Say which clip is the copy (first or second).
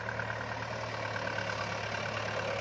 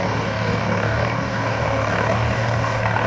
second